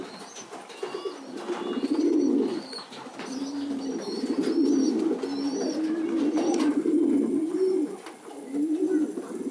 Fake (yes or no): no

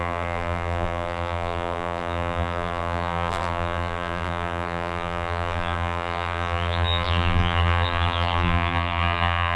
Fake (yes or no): yes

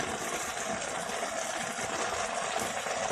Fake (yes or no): yes